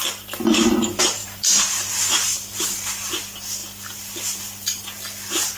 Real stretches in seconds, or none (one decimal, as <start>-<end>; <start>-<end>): 0.0-1.2; 3.1-5.6